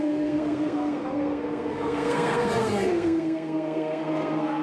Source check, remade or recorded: remade